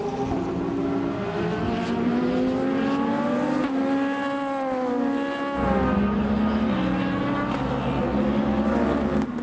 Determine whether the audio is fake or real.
real